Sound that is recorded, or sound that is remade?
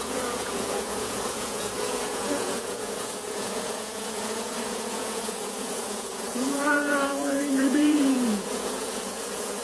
remade